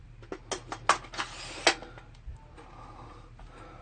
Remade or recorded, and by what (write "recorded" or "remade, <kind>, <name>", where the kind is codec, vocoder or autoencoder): recorded